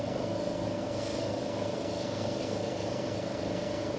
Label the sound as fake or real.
fake